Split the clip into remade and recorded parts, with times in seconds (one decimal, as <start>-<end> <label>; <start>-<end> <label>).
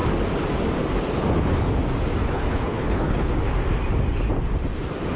0.0-2.2 recorded; 2.2-3.3 remade; 3.3-5.2 recorded